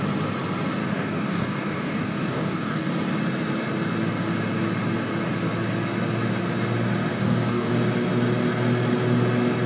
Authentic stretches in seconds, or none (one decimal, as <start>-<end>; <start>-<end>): 0.0-0.8; 2.8-7.1; 7.7-9.7